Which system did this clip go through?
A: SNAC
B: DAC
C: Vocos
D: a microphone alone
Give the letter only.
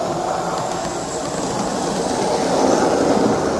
D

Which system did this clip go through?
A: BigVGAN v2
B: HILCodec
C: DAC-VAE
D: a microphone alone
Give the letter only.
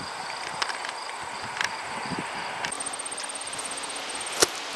D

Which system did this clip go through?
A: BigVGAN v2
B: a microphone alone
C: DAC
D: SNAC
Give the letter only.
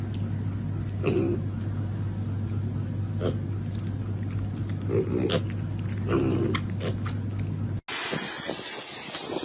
B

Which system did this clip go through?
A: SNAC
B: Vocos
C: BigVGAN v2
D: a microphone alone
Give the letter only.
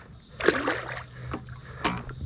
D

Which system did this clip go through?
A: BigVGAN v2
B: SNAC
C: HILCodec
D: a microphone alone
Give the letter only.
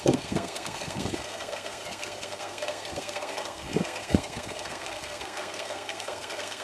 B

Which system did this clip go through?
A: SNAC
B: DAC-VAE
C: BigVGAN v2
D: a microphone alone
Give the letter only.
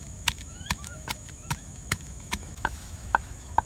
B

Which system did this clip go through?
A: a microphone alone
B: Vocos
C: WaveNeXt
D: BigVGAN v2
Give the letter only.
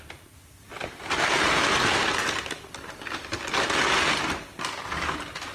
A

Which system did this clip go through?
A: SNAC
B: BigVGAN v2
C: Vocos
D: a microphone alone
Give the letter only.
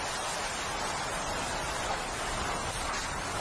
D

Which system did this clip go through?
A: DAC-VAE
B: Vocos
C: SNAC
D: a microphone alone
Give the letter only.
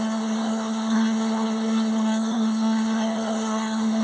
C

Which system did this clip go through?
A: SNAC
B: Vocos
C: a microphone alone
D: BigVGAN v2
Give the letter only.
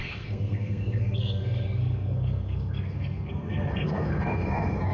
A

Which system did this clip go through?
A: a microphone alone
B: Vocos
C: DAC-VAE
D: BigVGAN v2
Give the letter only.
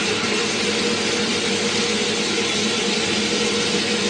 A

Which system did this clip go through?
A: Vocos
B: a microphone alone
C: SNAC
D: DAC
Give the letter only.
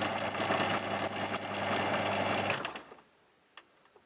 B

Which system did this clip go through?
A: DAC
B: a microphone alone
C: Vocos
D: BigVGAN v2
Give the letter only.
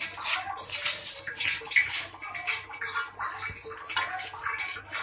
B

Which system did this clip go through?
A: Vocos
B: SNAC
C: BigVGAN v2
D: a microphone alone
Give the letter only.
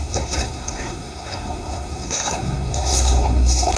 B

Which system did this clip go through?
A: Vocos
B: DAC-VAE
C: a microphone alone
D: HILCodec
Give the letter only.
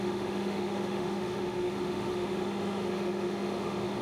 B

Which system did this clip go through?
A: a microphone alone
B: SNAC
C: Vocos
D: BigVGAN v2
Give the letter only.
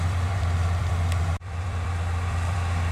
D